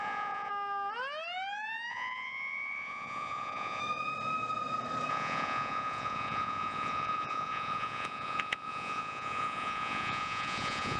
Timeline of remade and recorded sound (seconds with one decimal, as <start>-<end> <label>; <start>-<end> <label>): 0.0-0.5 remade; 0.5-1.9 recorded; 1.9-3.8 remade; 3.8-5.1 recorded; 5.1-11.0 remade